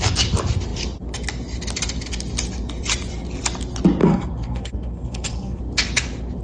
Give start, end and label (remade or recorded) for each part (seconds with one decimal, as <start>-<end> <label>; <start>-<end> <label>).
0.0-4.0 recorded; 4.0-5.6 remade; 5.6-6.4 recorded